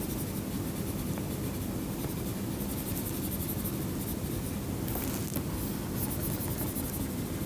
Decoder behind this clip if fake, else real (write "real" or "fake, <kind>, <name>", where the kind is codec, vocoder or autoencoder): real